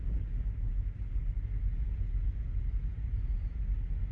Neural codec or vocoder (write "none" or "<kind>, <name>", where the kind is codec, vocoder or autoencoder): none